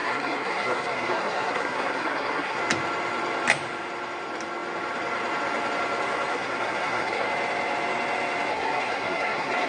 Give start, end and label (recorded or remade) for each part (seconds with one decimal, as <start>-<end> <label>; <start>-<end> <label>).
0.0-2.6 remade; 2.6-6.3 recorded; 6.3-7.3 remade; 7.3-8.5 recorded; 8.5-9.7 remade